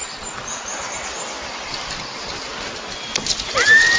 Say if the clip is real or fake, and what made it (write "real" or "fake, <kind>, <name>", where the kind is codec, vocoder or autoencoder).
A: real